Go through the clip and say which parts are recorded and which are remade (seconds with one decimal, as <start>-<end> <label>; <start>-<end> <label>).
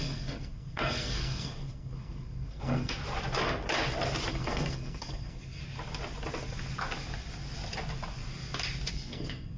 0.0-3.0 remade; 3.0-4.3 recorded; 4.3-5.6 remade; 5.6-8.9 recorded; 8.9-9.6 remade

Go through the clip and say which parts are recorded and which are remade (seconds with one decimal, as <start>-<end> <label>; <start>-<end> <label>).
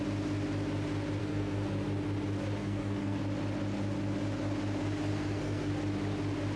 0.0-1.2 recorded; 1.2-1.7 remade; 1.7-2.6 recorded; 2.6-3.2 remade; 3.2-5.1 recorded; 5.1-5.7 remade; 5.7-6.6 recorded